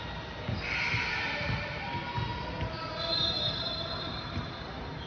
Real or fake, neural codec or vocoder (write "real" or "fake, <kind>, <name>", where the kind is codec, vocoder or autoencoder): real